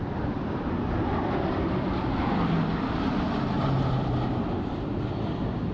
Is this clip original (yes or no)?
no